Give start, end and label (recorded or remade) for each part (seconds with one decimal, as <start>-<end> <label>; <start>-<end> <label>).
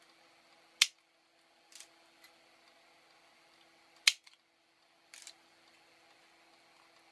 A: 0.0-7.1 recorded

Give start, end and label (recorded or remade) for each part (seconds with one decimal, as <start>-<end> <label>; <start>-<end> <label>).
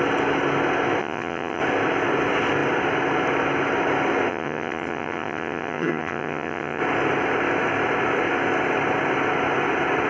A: 0.0-1.0 recorded; 1.0-1.6 remade; 1.6-4.3 recorded; 4.3-6.8 remade; 6.8-10.1 recorded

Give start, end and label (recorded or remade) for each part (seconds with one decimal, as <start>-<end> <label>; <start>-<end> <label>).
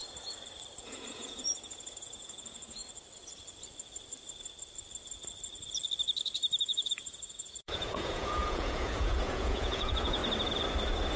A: 0.0-0.8 recorded; 0.8-2.8 remade; 2.8-6.6 recorded; 6.6-10.2 remade; 10.2-11.2 recorded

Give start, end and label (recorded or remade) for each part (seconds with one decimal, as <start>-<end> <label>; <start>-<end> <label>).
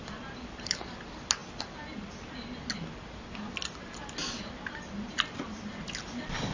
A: 0.0-6.5 recorded